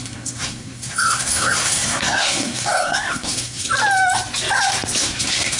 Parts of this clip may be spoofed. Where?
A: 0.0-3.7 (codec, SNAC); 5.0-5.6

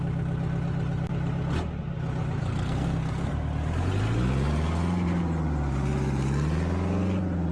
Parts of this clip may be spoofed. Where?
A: 2.4-3.3 (codec, SNAC)

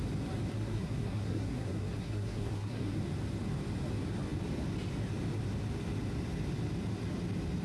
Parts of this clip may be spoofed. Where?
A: 0.5-3.0 (codec, SNAC)